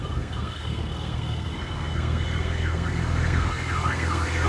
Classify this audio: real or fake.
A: fake